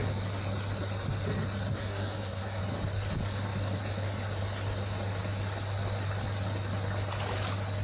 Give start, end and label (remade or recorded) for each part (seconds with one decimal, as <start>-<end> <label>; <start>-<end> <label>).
0.0-1.7 recorded; 1.7-2.6 remade; 2.6-7.8 recorded